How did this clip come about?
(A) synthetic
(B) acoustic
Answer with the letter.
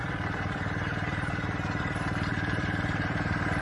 A